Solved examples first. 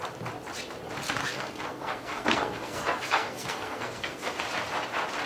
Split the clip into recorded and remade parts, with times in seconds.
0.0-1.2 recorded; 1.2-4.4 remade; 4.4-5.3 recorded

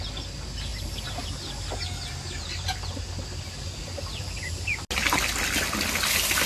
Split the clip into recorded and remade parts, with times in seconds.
0.0-6.5 recorded

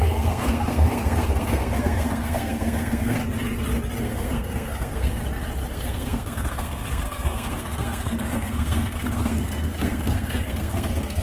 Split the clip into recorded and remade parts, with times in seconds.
0.0-3.2 remade; 3.2-4.0 recorded; 4.0-5.2 remade; 5.2-5.7 recorded; 5.7-11.2 remade

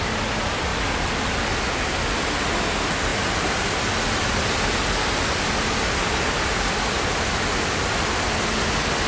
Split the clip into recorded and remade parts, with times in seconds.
0.0-9.1 recorded